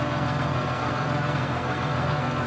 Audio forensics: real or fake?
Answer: fake